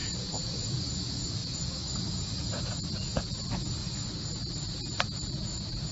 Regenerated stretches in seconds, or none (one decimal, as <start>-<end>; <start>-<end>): 0.0-3.8